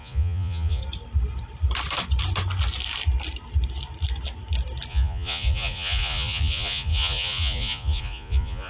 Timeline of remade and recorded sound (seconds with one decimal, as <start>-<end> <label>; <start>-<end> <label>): 0.0-0.8 remade; 0.8-4.9 recorded; 4.9-8.7 remade